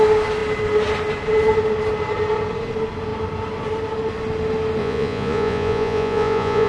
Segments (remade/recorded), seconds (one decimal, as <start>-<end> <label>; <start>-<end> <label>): 0.0-4.8 recorded; 4.8-6.7 remade